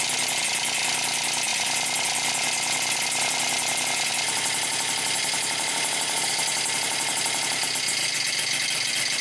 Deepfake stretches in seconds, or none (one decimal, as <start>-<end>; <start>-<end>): 1.5-4.1; 8.4-9.2